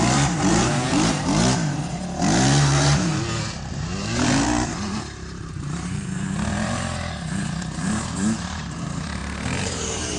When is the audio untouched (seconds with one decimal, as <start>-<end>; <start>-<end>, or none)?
3.1-3.7